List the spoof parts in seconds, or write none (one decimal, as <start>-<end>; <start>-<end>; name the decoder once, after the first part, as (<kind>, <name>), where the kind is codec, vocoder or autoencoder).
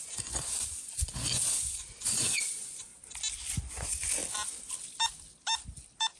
0.0-2.9 (vocoder, Vocos); 3.7-4.2